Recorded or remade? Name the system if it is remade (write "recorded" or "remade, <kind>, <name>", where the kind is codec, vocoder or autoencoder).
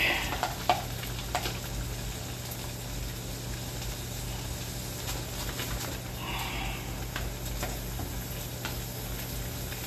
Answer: recorded